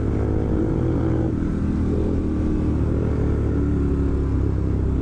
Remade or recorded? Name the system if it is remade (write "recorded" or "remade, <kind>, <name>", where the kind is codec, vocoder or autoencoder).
recorded